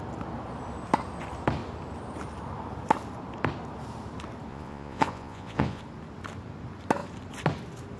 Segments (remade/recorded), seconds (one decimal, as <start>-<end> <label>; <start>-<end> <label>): 0.0-4.5 recorded; 4.5-5.8 remade; 5.8-8.0 recorded